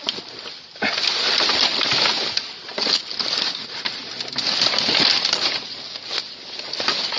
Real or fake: real